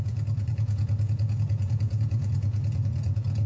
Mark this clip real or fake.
fake